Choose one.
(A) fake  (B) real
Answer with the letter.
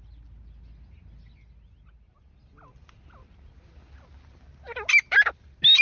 B